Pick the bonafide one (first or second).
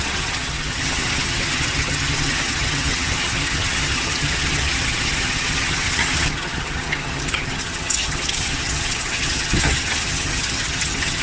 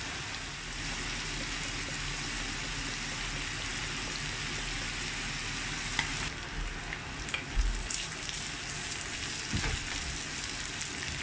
second